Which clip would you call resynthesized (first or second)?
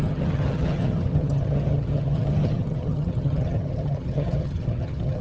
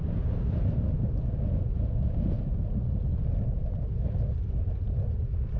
first